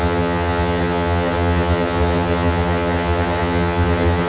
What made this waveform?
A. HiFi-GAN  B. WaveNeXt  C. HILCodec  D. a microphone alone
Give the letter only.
A